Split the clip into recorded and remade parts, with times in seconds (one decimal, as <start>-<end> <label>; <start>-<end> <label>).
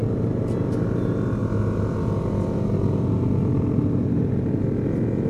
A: 0.0-5.3 recorded